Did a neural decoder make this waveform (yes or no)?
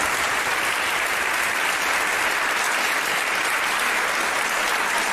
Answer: no